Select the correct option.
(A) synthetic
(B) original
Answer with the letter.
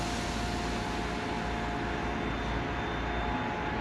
B